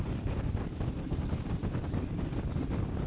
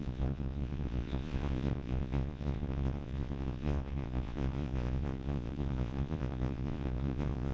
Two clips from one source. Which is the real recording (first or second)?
first